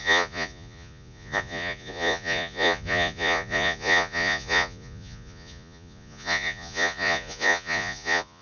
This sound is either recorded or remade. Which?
remade